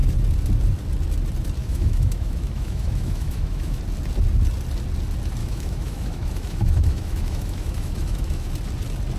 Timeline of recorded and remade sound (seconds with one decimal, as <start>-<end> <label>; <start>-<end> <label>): 0.0-1.6 recorded; 1.6-3.8 remade; 3.8-5.4 recorded; 5.4-8.5 remade; 8.5-9.2 recorded